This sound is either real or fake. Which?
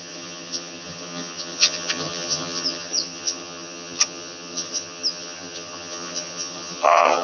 fake